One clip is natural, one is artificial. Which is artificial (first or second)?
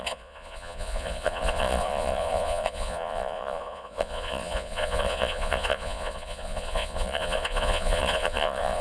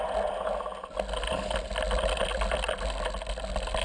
first